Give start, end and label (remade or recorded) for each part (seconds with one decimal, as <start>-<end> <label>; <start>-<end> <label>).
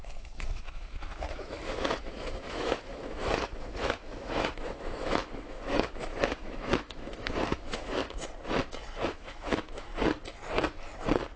0.0-8.0 remade; 8.0-9.1 recorded; 9.1-9.9 remade; 9.9-11.4 recorded